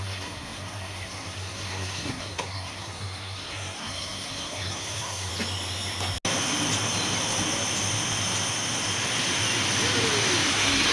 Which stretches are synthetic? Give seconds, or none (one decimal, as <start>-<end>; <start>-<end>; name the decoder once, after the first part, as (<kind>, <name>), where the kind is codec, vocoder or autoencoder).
0.0-5.3 (codec, SNAC); 10.5-10.9